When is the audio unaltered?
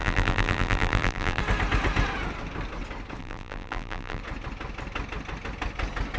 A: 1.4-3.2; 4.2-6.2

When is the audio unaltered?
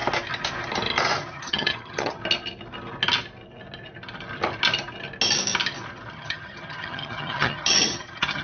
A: 0.0-1.2; 2.2-6.1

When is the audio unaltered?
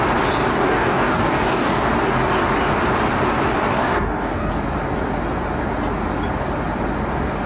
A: 0.0-0.5; 1.9-3.7; 4.5-7.5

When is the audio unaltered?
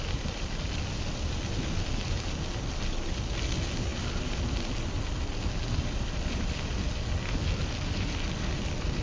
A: 0.0-9.0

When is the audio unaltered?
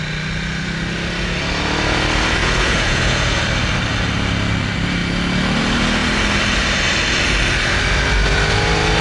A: 0.0-2.4; 3.4-9.0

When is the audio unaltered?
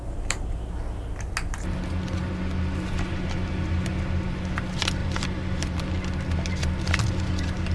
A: 0.0-5.0; 5.8-7.7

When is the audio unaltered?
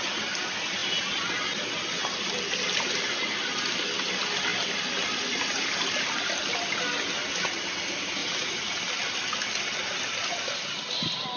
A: 0.0-8.2; 8.8-11.4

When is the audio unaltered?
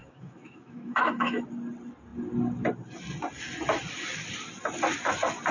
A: 1.4-5.5